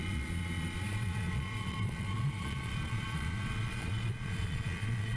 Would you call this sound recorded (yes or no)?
no